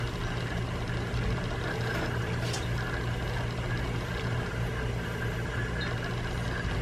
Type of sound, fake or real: real